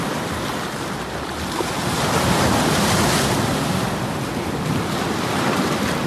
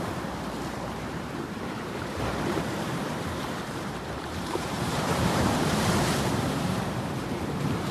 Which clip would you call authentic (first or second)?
first